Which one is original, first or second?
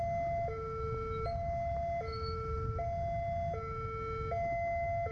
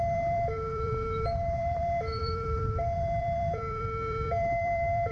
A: first